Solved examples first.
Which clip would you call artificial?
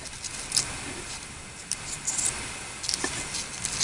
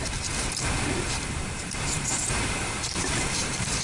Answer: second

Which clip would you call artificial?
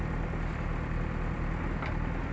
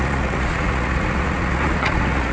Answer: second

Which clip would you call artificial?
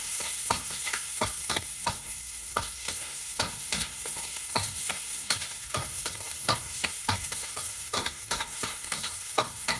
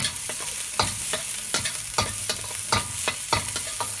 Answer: first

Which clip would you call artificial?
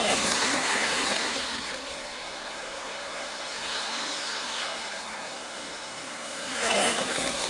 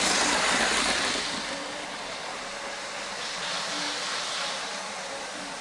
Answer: first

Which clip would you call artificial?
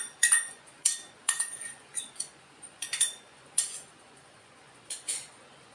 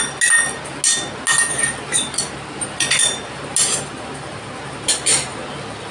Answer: first